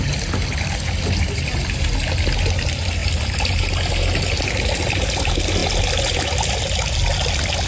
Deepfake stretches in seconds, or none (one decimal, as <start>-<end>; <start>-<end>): none